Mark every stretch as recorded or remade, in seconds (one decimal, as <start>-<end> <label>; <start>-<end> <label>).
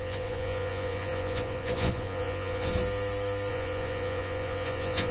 0.0-2.7 remade; 2.7-3.5 recorded; 3.5-5.1 remade